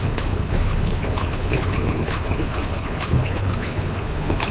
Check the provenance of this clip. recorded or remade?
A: remade